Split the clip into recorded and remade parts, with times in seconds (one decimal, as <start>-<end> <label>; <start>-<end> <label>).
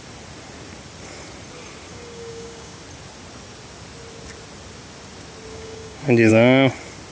0.0-1.9 recorded; 1.9-2.8 remade; 2.8-5.5 recorded; 5.5-6.3 remade; 6.3-7.1 recorded